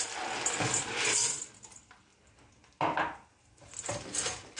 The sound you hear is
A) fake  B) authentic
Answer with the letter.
B